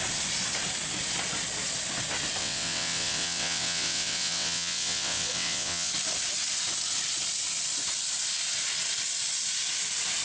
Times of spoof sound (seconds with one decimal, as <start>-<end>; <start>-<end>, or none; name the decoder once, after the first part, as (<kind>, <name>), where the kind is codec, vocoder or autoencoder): 2.4-5.9 (vocoder, WaveNeXt)